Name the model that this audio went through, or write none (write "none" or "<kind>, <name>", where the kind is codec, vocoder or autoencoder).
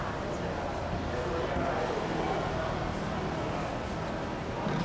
none